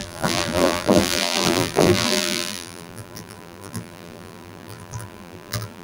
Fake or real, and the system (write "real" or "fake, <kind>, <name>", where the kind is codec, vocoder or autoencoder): fake, vocoder, BigVGAN v2